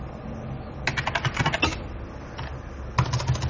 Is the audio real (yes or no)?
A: yes